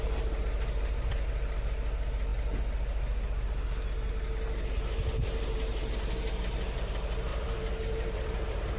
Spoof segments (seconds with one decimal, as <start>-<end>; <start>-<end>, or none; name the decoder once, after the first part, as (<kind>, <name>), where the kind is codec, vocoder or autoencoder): 7.3-8.8 (vocoder, BigVGAN v2)